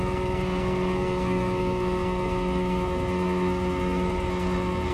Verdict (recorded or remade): remade